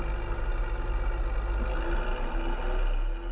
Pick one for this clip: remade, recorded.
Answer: recorded